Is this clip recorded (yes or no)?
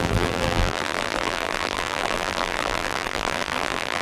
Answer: no